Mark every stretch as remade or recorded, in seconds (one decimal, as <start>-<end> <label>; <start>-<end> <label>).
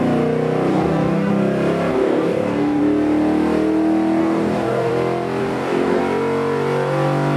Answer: 0.0-0.7 recorded; 0.7-1.3 remade; 1.3-1.9 recorded; 1.9-2.8 remade; 2.8-4.2 recorded; 4.2-4.9 remade; 4.9-5.4 recorded; 5.4-6.0 remade; 6.0-7.4 recorded